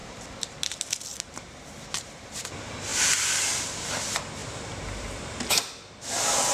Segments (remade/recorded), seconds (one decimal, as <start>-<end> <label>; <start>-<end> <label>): 0.0-0.6 remade; 0.6-1.1 recorded; 1.1-2.5 remade; 2.5-4.4 recorded; 4.4-5.5 remade; 5.5-6.5 recorded